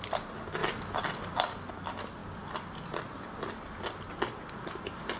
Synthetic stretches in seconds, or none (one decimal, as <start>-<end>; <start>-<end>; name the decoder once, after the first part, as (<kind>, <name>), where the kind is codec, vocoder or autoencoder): none